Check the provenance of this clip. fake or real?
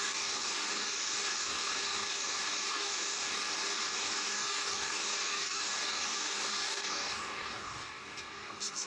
fake